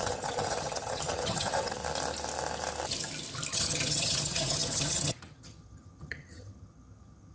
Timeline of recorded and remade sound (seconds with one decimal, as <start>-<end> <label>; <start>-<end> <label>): 0.0-1.8 remade; 1.8-3.5 recorded; 3.5-7.3 remade